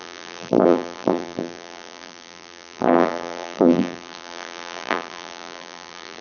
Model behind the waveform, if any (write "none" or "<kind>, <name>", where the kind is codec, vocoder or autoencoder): vocoder, BigVGAN v2